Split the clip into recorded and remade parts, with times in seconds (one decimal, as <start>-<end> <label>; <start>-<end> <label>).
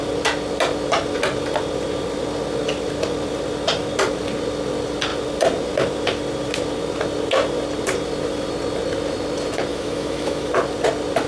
0.0-9.7 recorded; 9.7-10.5 remade; 10.5-11.3 recorded